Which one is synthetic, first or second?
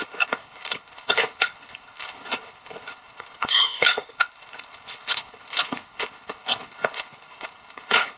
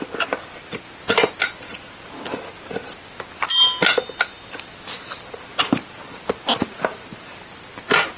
first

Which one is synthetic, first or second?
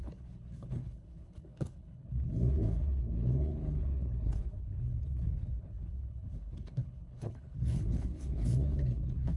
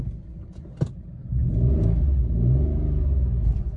first